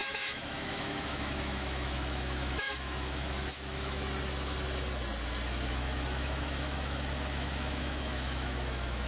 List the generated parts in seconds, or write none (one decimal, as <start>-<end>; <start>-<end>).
0.0-4.0; 5.7-9.1